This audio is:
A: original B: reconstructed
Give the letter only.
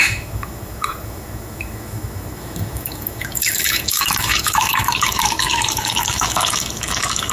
B